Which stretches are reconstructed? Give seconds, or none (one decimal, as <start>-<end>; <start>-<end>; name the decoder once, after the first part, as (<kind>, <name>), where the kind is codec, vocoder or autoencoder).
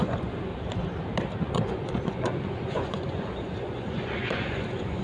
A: 0.0-0.5 (vocoder, Vocos); 1.4-5.0